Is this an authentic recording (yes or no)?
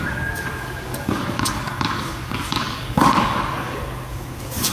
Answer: no